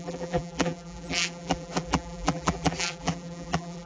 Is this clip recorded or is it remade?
remade